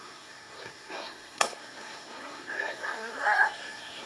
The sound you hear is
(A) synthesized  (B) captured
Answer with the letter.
A